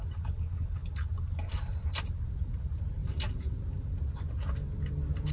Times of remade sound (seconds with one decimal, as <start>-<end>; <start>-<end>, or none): none